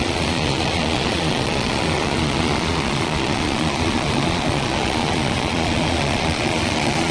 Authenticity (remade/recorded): remade